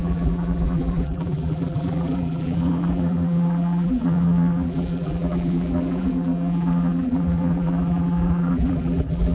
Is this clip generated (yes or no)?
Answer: yes